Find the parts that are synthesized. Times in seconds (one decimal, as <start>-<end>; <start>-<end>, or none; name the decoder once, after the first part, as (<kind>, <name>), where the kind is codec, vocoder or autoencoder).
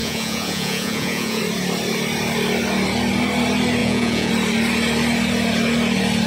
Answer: 0.0-1.4 (vocoder, Vocos); 3.8-4.3